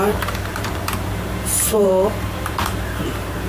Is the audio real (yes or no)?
no